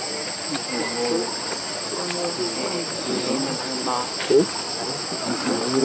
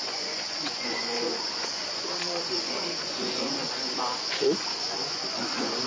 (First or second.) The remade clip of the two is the second